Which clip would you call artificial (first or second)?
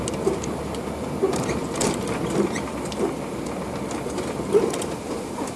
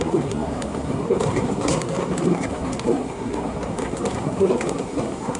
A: second